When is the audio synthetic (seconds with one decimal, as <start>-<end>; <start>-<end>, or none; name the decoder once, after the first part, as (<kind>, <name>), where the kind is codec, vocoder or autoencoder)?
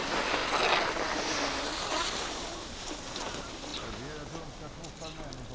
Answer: none